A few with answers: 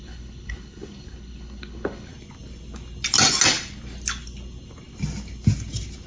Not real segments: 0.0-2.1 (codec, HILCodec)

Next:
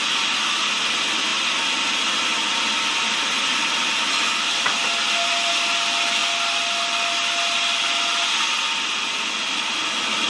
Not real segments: none

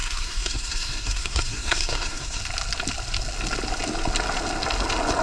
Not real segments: 0.0-2.4 (codec, SNAC)

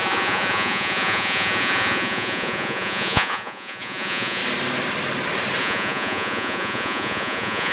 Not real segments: 0.0-4.4 (vocoder, Vocos); 5.6-7.7

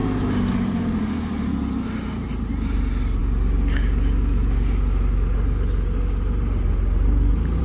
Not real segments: 0.0-1.5 (vocoder, BigVGAN v2)

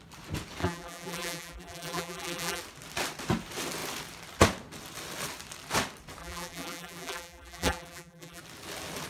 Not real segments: 0.6-2.6 (vocoder, BigVGAN v2); 6.2-8.4